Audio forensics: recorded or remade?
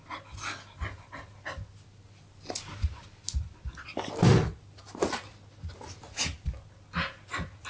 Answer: recorded